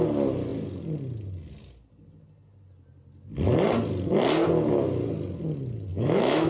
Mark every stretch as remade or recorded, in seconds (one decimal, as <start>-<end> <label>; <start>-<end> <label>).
0.0-5.9 recorded; 5.9-6.5 remade